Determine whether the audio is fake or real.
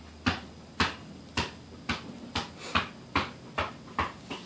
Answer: real